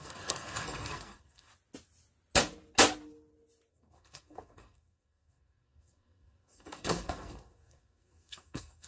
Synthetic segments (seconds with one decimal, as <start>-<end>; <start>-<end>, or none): 0.0-1.5; 3.7-8.9